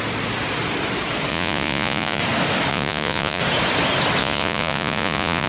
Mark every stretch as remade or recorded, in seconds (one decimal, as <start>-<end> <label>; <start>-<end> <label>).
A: 0.0-1.3 recorded; 1.3-2.2 remade; 2.2-2.7 recorded; 2.7-3.4 remade; 3.4-4.2 recorded; 4.2-5.5 remade